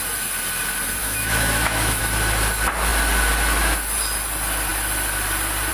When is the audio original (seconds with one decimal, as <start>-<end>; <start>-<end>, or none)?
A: 0.0-1.0; 2.0-5.7